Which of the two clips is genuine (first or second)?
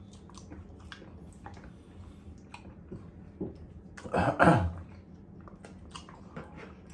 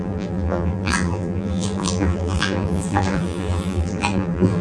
first